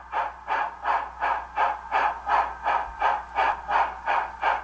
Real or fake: real